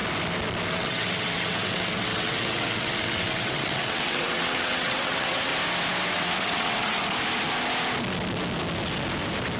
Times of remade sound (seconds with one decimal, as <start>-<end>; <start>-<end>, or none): 0.7-5.5; 6.1-7.0